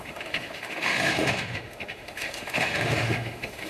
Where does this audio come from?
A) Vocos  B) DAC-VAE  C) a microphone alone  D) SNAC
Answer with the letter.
B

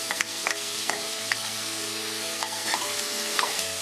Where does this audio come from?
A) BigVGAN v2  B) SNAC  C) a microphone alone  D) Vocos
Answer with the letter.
B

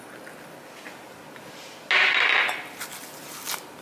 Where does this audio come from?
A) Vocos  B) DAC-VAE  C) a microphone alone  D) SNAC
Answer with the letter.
C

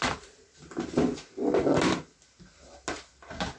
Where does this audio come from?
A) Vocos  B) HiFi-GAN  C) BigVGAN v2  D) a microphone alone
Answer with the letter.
D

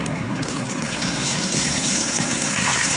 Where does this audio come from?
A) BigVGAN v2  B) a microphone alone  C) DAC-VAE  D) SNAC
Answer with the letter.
D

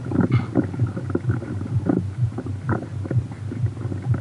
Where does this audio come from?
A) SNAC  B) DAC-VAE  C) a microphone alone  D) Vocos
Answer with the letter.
C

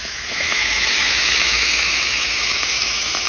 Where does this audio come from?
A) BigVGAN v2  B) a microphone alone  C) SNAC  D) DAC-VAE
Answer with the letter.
D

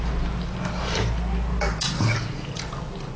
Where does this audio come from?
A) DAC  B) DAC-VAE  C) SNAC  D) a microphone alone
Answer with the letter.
D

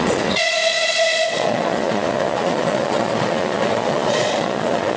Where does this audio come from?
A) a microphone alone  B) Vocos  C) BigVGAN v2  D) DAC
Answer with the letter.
B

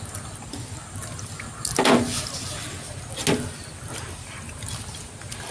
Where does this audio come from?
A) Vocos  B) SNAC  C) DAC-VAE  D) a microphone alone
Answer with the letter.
D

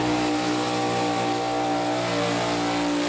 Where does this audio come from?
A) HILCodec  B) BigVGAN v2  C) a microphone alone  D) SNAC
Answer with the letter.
C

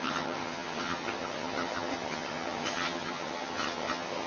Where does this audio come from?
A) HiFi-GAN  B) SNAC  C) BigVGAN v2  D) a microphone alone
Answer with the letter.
A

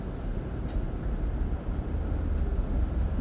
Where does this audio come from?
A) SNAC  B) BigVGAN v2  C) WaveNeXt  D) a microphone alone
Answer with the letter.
D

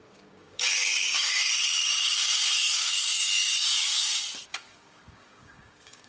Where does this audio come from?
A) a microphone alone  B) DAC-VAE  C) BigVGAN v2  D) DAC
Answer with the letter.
D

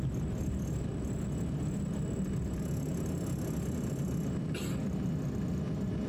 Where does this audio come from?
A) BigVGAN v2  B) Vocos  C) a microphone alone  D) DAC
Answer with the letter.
C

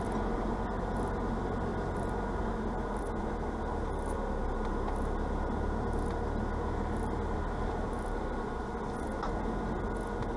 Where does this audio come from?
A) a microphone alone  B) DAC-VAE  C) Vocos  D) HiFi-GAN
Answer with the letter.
A